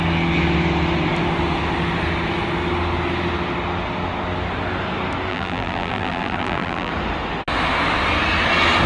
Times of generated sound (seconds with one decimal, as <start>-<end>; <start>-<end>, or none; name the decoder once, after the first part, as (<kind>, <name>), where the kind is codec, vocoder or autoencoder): 5.3-6.9 (vocoder, BigVGAN v2)